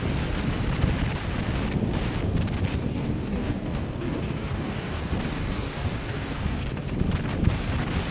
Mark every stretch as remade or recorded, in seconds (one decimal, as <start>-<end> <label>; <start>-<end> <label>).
0.0-2.8 recorded; 2.8-5.0 remade; 5.0-5.4 recorded; 5.4-6.9 remade; 6.9-8.1 recorded